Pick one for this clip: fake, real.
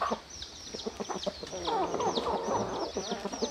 real